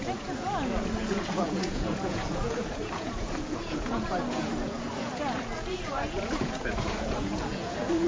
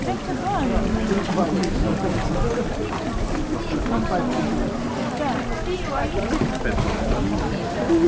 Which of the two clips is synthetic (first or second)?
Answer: first